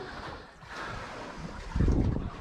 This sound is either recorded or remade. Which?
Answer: recorded